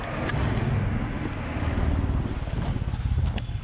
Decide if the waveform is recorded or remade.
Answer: recorded